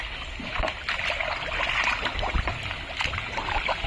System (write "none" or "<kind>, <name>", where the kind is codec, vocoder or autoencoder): none